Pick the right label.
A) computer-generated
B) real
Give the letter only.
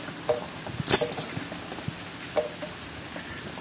B